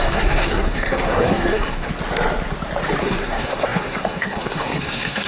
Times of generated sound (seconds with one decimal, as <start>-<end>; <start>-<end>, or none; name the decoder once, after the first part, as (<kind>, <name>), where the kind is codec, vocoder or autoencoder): 0.0-1.9 (codec, SNAC); 3.0-5.3